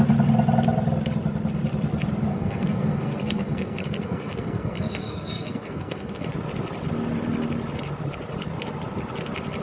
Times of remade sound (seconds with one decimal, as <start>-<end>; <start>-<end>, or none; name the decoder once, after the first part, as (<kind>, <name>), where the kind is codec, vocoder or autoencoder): 2.3-6.3 (codec, SNAC)